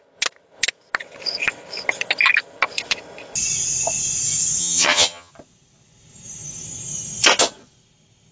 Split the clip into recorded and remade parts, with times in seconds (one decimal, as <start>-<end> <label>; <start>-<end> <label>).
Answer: 0.0-4.6 recorded; 4.6-5.3 remade; 5.3-8.3 recorded